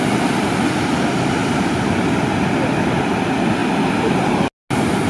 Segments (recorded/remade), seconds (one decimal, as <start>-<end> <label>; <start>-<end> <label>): 0.0-1.4 recorded; 1.4-1.9 remade; 1.9-5.1 recorded